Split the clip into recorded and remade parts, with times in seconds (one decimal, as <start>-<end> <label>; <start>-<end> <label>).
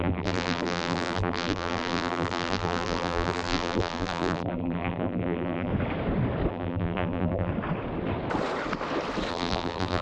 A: 0.0-5.7 remade; 5.7-6.5 recorded; 6.5-7.5 remade; 7.5-9.3 recorded; 9.3-10.0 remade